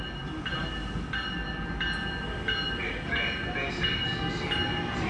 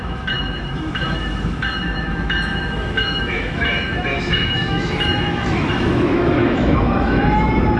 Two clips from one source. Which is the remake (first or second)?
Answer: second